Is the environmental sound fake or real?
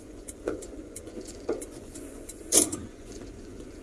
fake